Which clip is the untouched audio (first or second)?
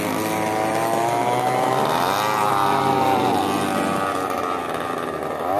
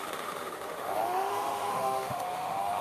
first